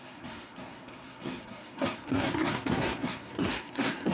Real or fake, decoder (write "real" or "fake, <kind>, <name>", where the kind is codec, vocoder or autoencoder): fake, codec, SNAC